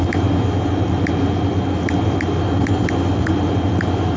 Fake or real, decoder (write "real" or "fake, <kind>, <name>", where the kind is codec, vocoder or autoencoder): real